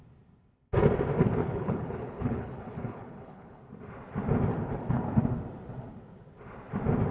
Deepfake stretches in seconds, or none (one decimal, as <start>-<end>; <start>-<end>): 1.4-3.6; 4.5-5.0